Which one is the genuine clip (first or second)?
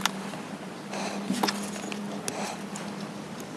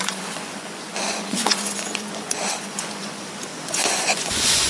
first